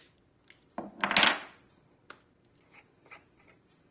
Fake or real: real